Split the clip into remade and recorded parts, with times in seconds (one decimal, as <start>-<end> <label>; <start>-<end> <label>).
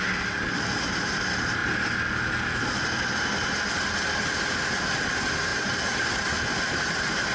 0.0-7.3 recorded